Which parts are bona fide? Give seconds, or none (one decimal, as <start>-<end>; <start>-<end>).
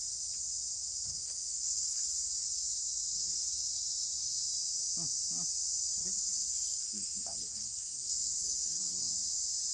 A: 0.0-1.1; 4.4-6.0; 9.1-9.7